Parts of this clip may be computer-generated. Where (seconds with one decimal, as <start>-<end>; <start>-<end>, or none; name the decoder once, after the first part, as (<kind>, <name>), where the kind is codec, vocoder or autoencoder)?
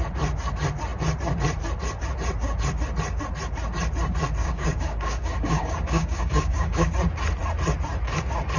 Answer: 4.4-6.9 (codec, DAC)